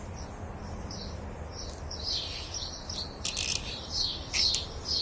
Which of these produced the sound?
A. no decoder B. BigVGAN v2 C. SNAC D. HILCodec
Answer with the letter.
B